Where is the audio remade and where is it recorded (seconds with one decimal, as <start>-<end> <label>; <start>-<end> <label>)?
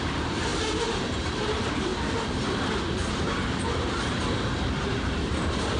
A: 0.0-0.5 remade; 0.5-1.1 recorded; 1.1-1.9 remade; 1.9-5.8 recorded